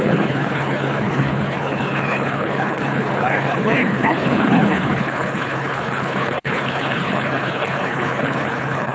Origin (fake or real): fake